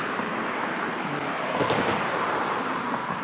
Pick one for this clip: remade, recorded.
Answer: remade